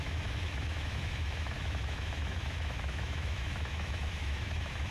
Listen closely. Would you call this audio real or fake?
fake